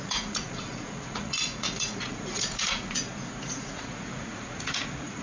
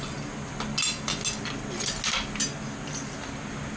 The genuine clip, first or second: second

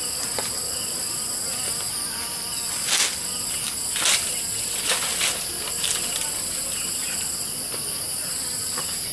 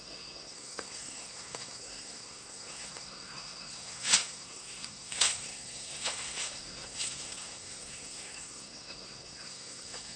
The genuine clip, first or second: first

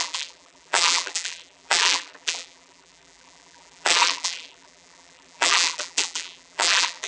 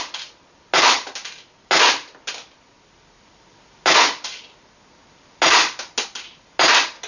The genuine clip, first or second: second